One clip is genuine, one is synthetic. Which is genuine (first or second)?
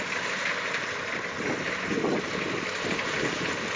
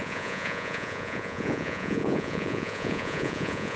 first